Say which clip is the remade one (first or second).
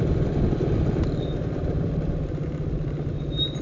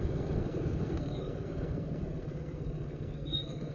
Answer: second